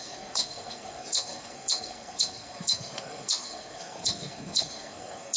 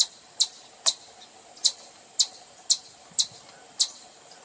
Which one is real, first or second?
second